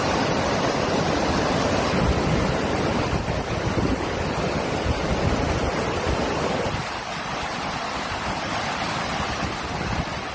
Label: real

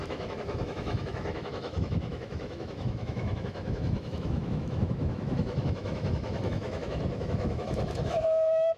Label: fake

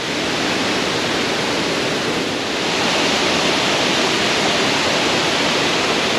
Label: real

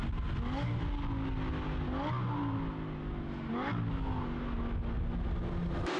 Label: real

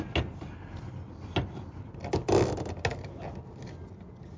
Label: real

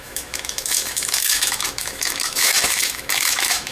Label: fake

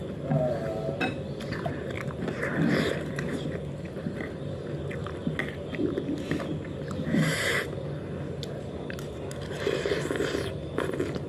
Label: real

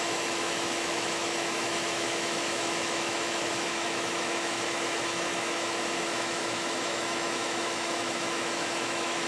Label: fake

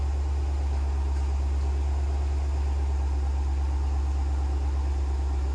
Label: real